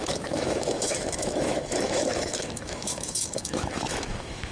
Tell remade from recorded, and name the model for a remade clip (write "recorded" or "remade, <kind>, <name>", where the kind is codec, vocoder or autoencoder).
remade, autoencoder, DAC-VAE